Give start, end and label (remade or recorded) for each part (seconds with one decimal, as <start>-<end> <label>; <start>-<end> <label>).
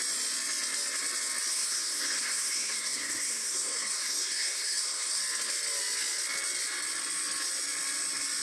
0.0-1.5 recorded; 1.5-5.2 remade; 5.2-8.4 recorded